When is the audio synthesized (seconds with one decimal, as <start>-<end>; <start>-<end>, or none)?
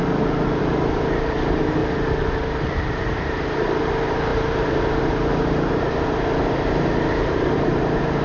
0.6-1.8; 2.9-8.2